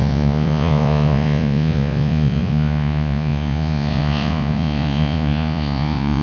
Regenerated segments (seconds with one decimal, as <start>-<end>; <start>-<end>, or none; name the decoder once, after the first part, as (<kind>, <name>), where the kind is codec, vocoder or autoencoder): 0.0-6.2 (vocoder, Vocos)